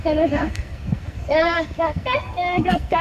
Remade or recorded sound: remade